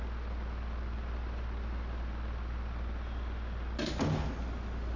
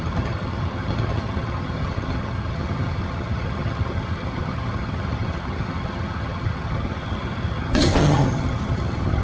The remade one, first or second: second